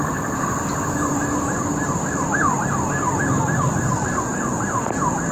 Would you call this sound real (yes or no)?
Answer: no